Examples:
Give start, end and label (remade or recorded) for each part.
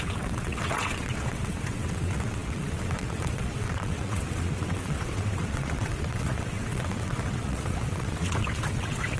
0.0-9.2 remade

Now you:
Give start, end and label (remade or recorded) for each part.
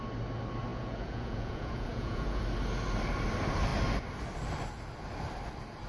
0.0-0.7 recorded; 0.7-2.4 remade; 2.4-5.9 recorded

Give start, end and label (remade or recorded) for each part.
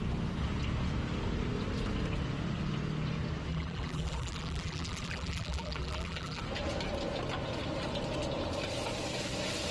0.0-3.5 recorded; 3.5-6.4 remade; 6.4-9.7 recorded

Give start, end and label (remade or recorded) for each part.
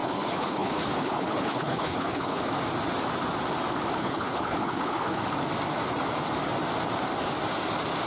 0.0-2.4 remade; 2.4-4.0 recorded; 4.0-5.2 remade; 5.2-8.1 recorded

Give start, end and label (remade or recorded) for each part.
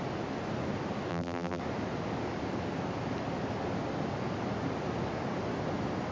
0.0-1.1 recorded; 1.1-1.6 remade; 1.6-6.1 recorded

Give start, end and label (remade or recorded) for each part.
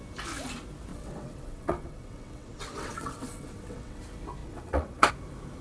0.0-0.9 recorded; 0.9-4.0 remade; 4.0-4.4 recorded; 4.4-5.1 remade; 5.1-5.6 recorded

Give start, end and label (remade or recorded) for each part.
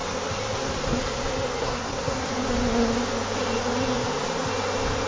0.0-1.6 recorded; 1.6-2.3 remade; 2.3-5.1 recorded